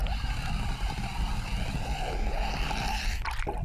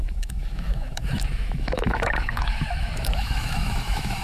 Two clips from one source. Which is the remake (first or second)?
second